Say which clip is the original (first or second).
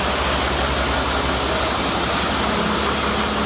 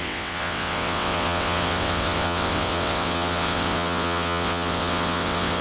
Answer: first